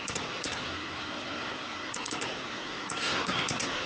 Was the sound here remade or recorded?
remade